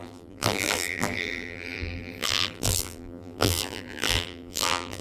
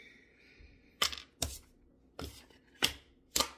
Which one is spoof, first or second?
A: first